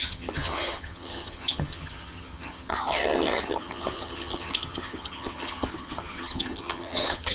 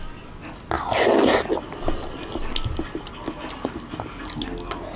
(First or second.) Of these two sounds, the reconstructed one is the first